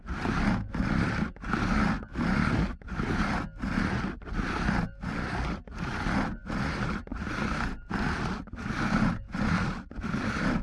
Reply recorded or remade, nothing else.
recorded